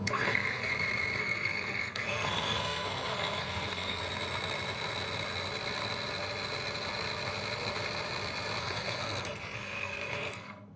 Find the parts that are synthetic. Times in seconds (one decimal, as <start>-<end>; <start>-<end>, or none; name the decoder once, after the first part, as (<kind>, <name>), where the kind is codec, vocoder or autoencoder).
0.0-0.7 (codec, SNAC); 1.2-4.0; 8.6-10.8